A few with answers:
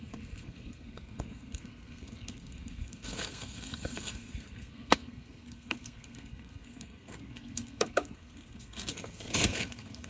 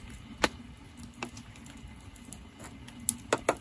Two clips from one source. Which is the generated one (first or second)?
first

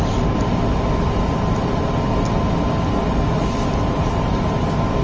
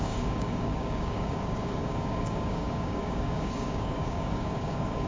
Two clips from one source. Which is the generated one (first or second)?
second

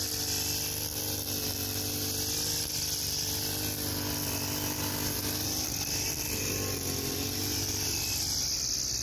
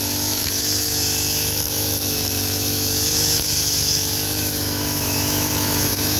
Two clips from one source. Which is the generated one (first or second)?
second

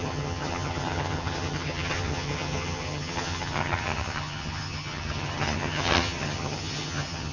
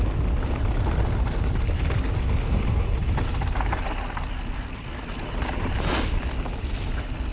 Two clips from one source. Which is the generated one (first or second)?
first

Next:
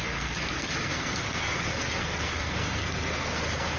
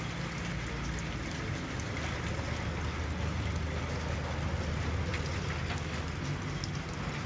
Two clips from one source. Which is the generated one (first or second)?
first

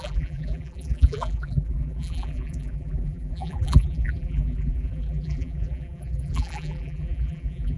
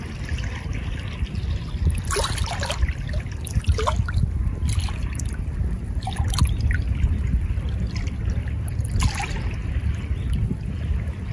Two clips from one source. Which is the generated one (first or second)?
first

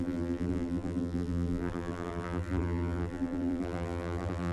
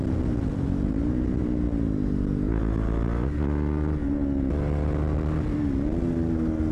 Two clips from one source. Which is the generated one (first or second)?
first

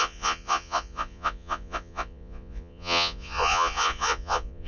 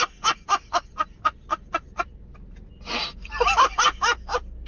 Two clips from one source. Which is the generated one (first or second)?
first